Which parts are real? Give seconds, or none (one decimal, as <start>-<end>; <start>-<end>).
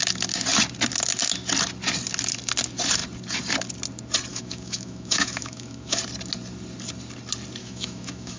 0.0-4.3; 6.0-7.6